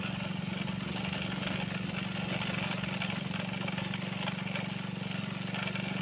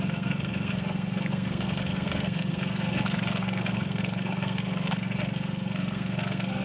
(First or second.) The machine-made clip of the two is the second